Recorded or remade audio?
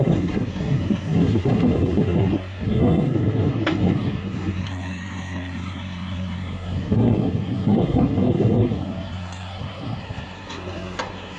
remade